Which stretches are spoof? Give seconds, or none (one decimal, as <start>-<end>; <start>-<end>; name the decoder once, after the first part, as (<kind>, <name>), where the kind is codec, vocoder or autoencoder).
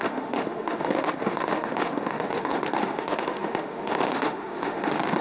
0.0-5.2 (autoencoder, DAC-VAE)